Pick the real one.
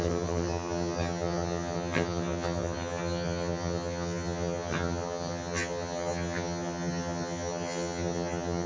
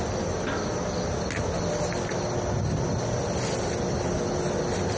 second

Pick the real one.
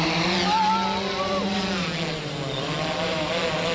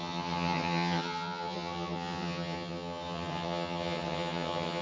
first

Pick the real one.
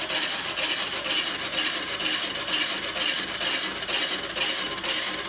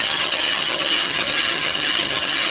first